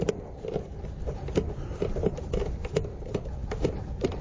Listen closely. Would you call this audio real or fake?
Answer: fake